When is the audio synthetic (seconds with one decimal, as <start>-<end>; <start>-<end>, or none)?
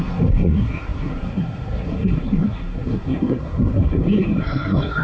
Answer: 0.0-5.0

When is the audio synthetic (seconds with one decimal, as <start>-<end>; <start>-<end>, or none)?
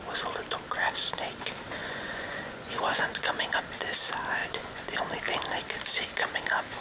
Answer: 1.8-3.3; 4.4-5.0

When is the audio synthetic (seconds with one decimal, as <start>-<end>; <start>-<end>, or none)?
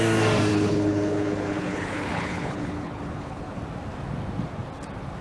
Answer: 0.5-3.6